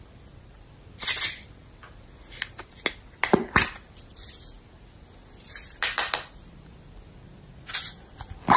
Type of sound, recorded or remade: recorded